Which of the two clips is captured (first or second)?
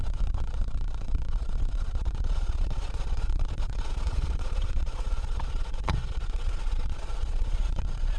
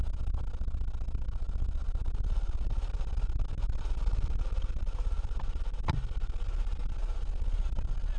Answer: second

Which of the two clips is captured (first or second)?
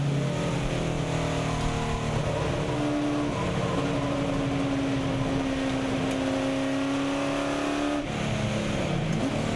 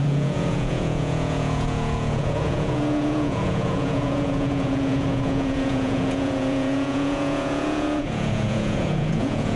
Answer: first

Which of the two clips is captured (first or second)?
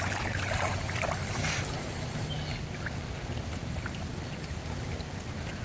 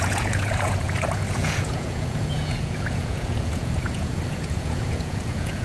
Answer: first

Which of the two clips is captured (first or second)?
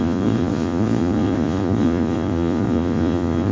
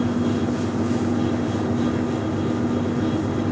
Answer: second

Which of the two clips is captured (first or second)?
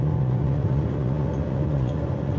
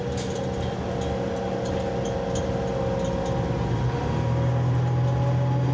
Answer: second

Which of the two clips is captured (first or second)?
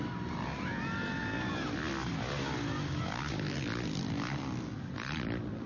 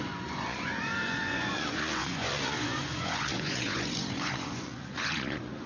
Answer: first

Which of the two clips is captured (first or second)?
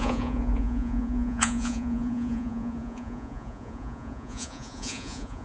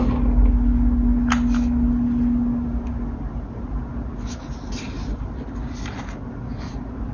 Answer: second